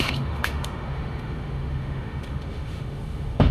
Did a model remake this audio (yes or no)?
yes